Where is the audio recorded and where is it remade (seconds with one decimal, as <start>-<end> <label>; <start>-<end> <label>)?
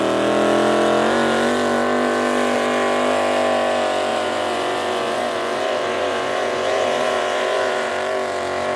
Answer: 0.0-4.1 recorded; 4.1-7.9 remade; 7.9-8.8 recorded